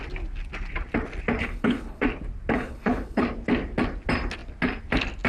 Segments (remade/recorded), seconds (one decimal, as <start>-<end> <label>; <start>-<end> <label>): 0.0-1.4 recorded; 1.4-2.0 remade; 2.0-2.5 recorded; 2.5-3.2 remade; 3.2-5.3 recorded